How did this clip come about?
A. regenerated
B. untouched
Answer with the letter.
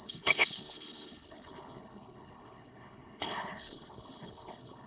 A